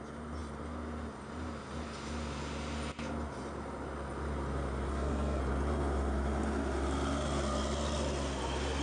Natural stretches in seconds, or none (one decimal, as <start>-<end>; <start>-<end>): 0.0-4.9; 5.4-8.8